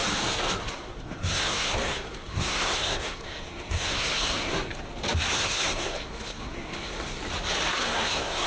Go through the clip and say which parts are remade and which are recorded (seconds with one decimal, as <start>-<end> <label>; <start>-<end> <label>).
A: 0.0-0.6 recorded; 0.6-4.5 remade; 4.5-5.3 recorded; 5.3-7.2 remade; 7.2-7.7 recorded; 7.7-8.5 remade